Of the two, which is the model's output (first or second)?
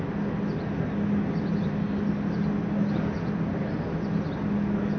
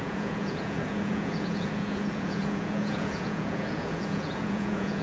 second